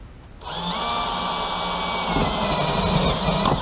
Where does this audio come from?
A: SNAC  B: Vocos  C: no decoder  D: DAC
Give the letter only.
C